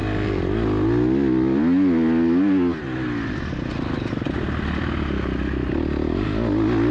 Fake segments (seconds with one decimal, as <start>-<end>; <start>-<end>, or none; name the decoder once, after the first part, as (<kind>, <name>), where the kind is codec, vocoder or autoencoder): none